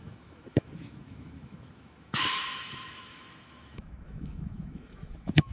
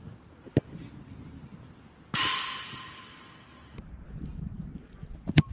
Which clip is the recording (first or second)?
second